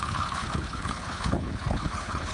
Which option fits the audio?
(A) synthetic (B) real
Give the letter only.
A